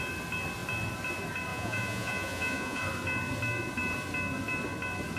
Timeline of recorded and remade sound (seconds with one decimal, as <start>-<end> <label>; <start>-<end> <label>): 0.0-1.5 recorded; 1.5-2.8 remade; 2.8-5.2 recorded